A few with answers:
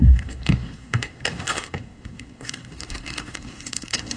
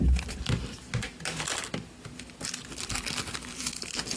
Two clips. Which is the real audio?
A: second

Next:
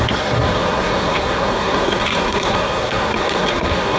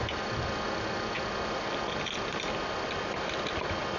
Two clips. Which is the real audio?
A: second